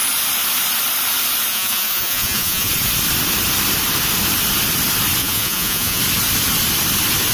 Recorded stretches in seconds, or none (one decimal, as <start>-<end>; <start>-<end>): 0.0-1.5; 2.7-5.2; 6.0-7.3